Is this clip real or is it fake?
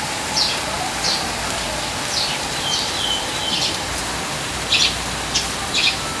real